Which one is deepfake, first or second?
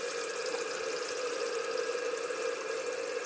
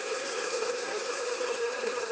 second